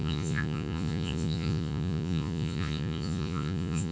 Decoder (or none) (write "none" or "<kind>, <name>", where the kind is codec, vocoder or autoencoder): vocoder, Vocos